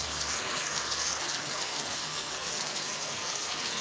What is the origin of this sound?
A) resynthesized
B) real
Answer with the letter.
A